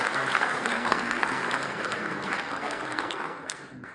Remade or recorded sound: remade